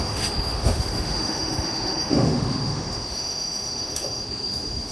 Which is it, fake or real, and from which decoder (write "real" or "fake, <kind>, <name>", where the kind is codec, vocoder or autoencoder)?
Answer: fake, autoencoder, DAC-VAE